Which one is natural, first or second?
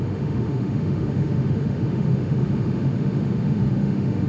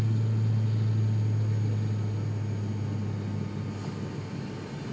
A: second